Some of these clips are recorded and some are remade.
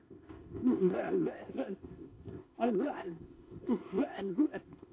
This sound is remade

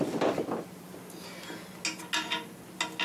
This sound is recorded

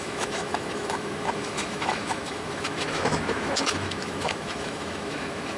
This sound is remade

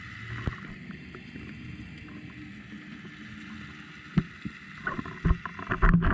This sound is recorded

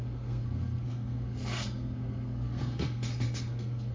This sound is remade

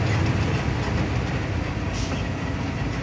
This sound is recorded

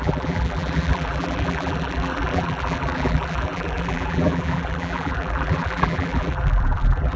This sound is remade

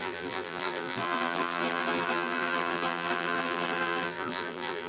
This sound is remade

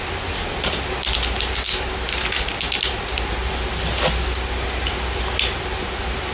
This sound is recorded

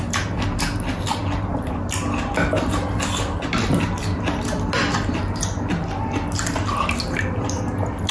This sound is recorded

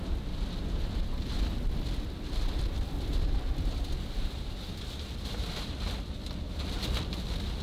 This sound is recorded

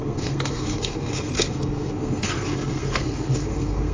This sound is remade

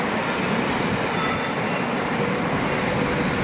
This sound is recorded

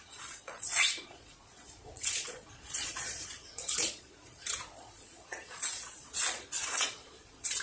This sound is remade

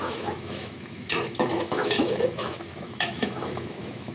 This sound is remade